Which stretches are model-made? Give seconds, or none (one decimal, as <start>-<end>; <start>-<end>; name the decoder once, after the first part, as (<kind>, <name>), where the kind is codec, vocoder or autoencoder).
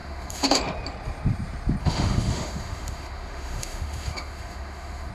0.0-0.6 (autoencoder, DAC-VAE); 1.8-5.1